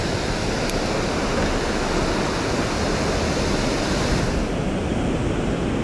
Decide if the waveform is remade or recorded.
recorded